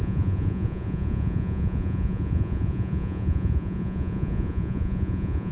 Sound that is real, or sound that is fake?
fake